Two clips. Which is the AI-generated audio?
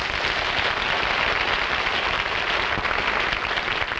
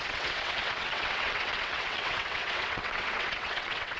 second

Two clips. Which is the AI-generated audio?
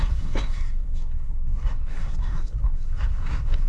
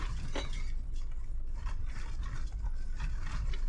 first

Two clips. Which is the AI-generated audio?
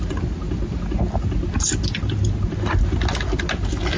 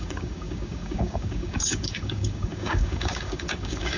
second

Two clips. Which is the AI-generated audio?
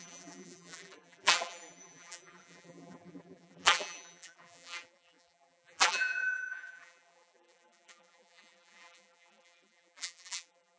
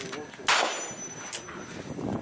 first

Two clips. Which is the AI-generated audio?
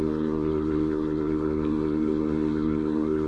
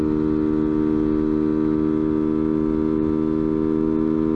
first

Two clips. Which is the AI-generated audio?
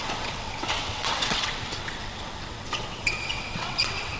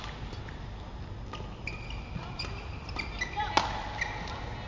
first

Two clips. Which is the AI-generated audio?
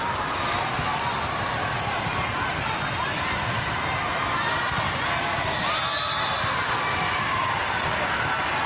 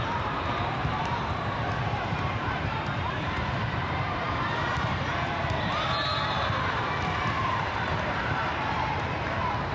second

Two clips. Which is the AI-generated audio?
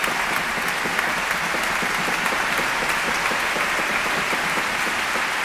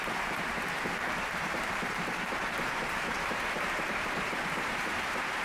second